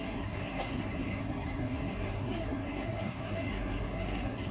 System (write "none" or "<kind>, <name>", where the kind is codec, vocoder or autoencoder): codec, SNAC